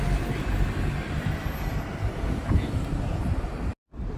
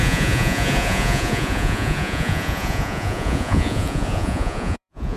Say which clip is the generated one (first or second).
second